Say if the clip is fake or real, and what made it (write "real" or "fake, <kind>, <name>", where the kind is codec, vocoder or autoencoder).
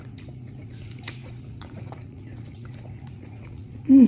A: fake, vocoder, Vocos